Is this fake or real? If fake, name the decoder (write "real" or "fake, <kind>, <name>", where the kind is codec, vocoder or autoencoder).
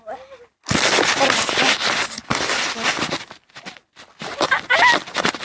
real